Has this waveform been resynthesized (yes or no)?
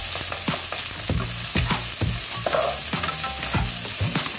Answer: no